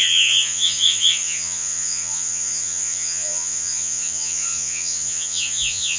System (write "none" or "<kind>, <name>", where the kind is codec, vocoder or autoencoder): vocoder, Vocos